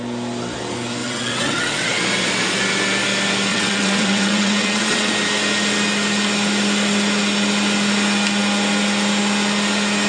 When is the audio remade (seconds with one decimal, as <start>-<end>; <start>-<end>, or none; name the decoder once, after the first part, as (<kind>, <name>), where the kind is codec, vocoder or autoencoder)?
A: 1.0-2.0 (vocoder, WaveNeXt); 3.5-5.1

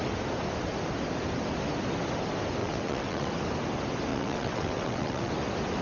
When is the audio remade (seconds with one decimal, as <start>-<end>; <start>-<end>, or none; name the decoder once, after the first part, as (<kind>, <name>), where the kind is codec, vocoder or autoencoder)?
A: 2.6-3.3 (vocoder, WaveNeXt); 4.1-5.3

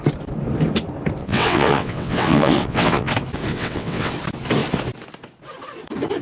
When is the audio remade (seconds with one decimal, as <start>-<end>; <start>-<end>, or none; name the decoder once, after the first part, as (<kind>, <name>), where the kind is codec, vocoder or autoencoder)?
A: 1.2-3.1 (vocoder, WaveNeXt); 3.5-4.1

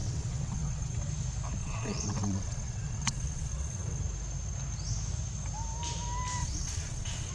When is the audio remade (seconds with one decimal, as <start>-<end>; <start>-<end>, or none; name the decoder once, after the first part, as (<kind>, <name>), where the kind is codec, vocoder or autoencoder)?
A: 0.0-1.0 (vocoder, WaveNeXt); 1.6-4.0; 6.4-7.3